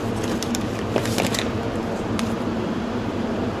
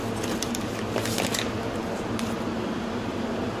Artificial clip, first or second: first